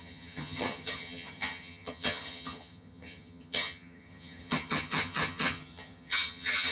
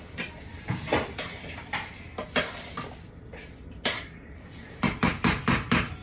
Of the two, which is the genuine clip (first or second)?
second